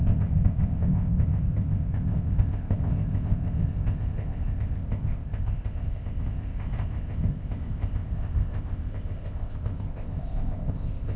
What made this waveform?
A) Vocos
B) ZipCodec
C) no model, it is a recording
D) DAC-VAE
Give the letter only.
B